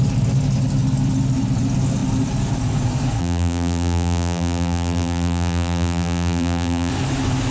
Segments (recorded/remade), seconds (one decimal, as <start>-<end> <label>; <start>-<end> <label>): 0.0-3.2 recorded; 3.2-6.9 remade; 6.9-7.5 recorded